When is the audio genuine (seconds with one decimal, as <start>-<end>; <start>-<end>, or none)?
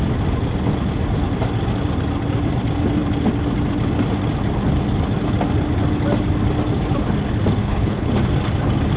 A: 0.0-7.6; 8.1-9.0